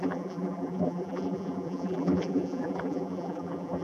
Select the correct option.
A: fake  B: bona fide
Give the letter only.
A